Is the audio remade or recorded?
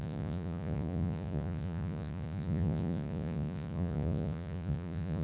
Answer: remade